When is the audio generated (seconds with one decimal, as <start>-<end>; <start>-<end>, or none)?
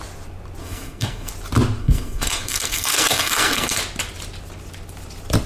0.6-1.3; 1.8-3.8